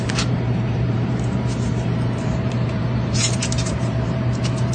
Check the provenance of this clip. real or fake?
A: fake